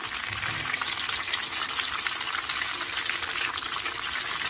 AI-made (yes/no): no